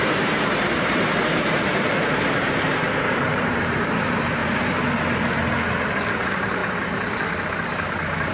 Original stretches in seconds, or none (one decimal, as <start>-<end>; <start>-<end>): 4.4-6.1; 6.6-8.3